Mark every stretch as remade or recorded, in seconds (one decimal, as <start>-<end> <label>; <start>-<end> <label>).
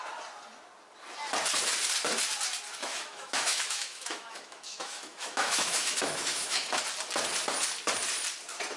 0.0-2.8 recorded; 2.8-6.8 remade; 6.8-8.8 recorded